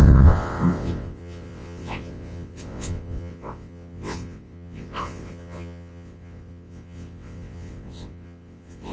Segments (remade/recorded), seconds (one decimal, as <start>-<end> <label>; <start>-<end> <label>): 0.0-8.9 remade